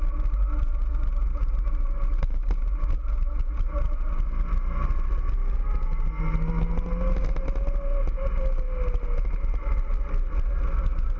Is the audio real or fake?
real